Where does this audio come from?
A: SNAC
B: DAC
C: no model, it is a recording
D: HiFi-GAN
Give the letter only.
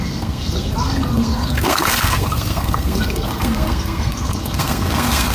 A